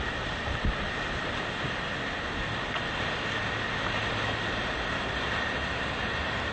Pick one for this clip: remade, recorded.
recorded